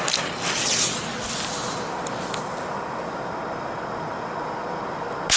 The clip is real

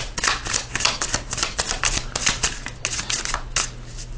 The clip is real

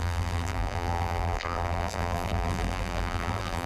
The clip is fake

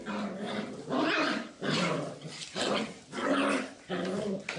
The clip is real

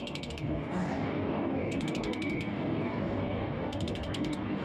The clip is fake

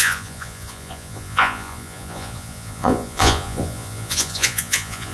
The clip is fake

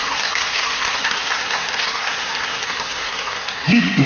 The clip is fake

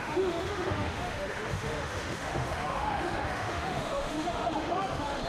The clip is fake